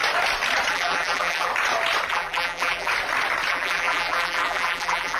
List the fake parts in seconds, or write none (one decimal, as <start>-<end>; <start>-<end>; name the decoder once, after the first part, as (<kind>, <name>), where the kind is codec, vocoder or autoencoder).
0.7-1.5 (vocoder, BigVGAN v2); 2.1-2.9; 3.5-5.2